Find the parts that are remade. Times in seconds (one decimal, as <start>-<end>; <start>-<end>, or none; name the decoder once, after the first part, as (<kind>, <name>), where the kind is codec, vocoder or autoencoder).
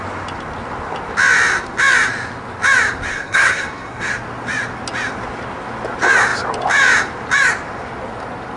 3.1-4.1 (codec, SNAC)